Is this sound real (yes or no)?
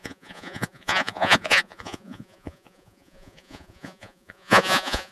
no